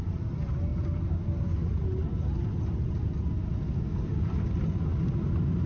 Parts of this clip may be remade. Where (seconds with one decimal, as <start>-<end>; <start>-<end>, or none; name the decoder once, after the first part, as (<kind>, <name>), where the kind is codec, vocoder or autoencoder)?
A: none